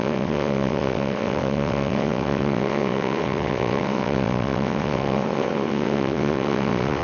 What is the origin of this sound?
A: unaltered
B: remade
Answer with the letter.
B